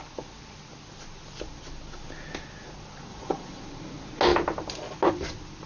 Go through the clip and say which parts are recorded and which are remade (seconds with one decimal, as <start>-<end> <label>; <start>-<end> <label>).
0.0-3.1 recorded; 3.1-3.6 remade; 3.6-5.7 recorded